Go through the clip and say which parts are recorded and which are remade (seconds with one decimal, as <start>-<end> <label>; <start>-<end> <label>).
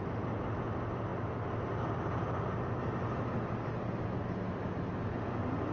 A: 0.0-5.7 recorded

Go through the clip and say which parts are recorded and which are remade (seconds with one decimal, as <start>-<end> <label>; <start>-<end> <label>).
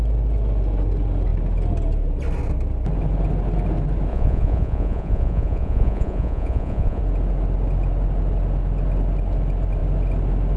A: 0.0-4.1 recorded; 4.1-7.0 remade; 7.0-10.6 recorded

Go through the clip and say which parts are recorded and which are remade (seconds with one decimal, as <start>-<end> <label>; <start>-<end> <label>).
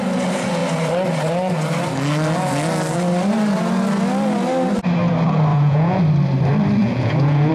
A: 0.0-5.5 recorded; 5.5-6.0 remade; 6.0-6.8 recorded; 6.8-7.5 remade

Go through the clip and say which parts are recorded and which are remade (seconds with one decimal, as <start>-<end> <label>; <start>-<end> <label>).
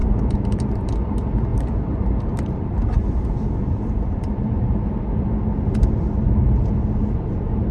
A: 0.0-0.9 remade; 0.9-1.5 recorded; 1.5-5.0 remade; 5.0-7.7 recorded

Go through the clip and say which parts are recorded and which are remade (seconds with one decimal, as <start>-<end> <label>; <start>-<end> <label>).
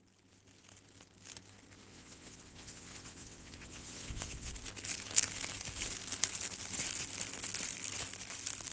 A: 0.0-1.9 recorded; 1.9-4.5 remade; 4.5-8.7 recorded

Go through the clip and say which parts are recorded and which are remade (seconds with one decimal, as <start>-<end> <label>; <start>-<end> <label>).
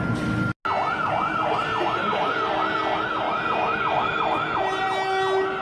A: 0.0-5.6 recorded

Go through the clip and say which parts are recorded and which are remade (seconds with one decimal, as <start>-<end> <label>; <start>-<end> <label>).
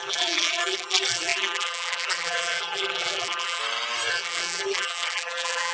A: 0.0-3.6 remade; 3.6-4.1 recorded; 4.1-5.7 remade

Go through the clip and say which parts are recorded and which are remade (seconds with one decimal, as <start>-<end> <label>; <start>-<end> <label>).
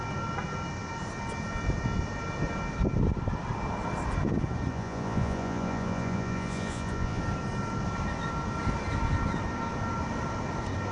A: 0.0-4.7 recorded; 4.7-7.2 remade; 7.2-10.9 recorded